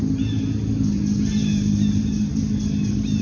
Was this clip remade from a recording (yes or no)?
no